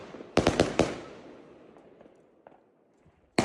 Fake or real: real